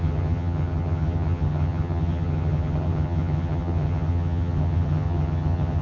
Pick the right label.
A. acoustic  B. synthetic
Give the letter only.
B